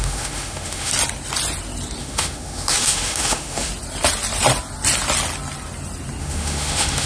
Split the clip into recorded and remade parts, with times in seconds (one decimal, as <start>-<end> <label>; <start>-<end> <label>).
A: 0.0-0.9 remade; 0.9-2.0 recorded; 2.0-3.7 remade; 3.7-6.2 recorded; 6.2-7.1 remade